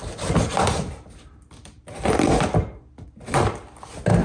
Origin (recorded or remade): recorded